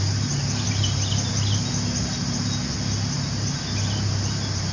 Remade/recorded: recorded